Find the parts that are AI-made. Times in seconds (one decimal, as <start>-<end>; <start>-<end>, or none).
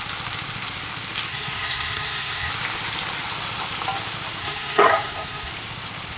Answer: 1.3-2.5; 4.4-5.5